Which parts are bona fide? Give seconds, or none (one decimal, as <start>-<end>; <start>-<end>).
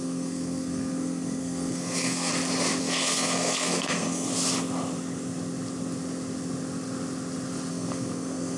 2.3-2.8; 4.3-7.7